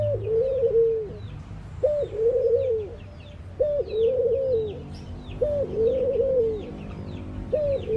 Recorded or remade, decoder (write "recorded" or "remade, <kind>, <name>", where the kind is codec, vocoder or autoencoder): recorded